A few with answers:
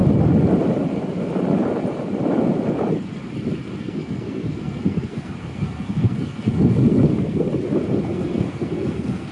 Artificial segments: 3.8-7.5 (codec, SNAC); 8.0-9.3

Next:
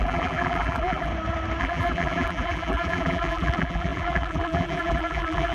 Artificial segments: 0.0-1.1 (vocoder, BigVGAN v2); 1.6-5.5

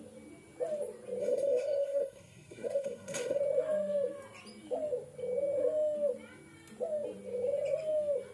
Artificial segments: 1.2-3.4 (codec, SNAC)

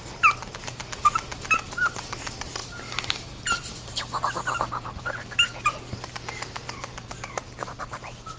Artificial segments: none

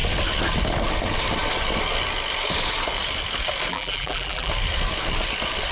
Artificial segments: 3.7-4.5 (vocoder, BigVGAN v2)

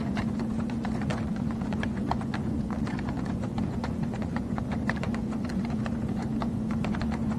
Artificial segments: 0.0-7.4 (vocoder, Vocos)

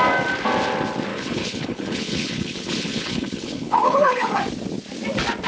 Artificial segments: 1.1-4.4 (codec, HILCodec)

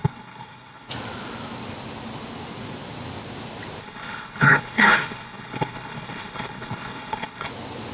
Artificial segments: 0.0-0.9 (codec, HILCodec); 3.8-7.5